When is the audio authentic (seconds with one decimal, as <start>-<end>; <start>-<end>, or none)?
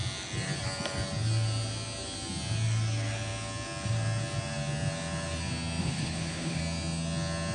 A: 0.0-5.8; 6.6-7.5